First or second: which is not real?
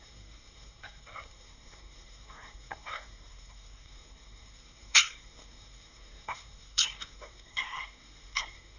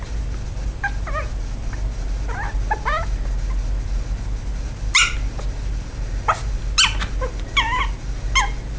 first